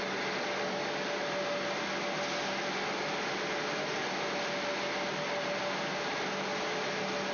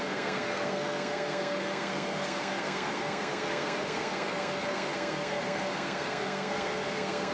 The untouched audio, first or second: first